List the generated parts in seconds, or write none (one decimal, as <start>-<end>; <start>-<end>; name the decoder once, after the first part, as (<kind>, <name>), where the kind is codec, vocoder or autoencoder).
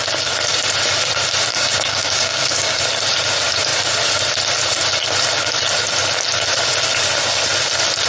1.5-2.8 (codec, DAC)